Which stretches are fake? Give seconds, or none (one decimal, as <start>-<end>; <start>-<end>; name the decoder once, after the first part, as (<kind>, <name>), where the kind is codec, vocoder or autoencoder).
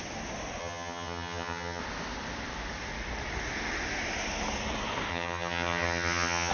0.6-1.8 (vocoder, HiFi-GAN); 5.1-6.5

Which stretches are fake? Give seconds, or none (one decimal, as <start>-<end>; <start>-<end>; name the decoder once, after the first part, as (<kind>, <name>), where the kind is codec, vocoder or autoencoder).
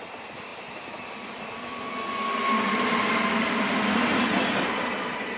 none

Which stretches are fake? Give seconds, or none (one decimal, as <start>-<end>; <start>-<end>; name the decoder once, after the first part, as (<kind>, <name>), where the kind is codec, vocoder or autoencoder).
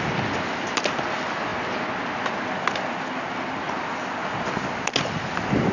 none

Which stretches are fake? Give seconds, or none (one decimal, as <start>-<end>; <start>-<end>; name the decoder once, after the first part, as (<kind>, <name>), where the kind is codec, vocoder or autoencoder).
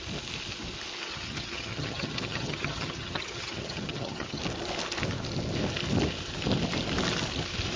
1.1-4.4 (vocoder, HiFi-GAN)